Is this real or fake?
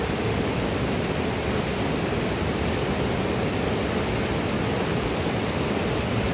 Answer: real